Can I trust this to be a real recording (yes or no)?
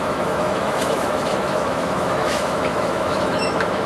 no